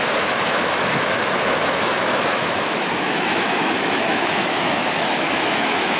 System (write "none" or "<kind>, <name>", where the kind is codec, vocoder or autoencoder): autoencoder, DAC-VAE